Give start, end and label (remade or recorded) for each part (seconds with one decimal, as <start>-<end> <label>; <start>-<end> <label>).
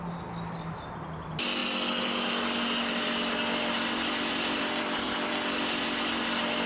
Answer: 0.0-6.7 recorded